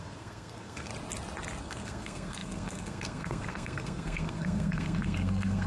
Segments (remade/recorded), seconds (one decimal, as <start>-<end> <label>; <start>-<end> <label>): 0.0-0.9 remade; 0.9-1.6 recorded; 1.6-5.7 remade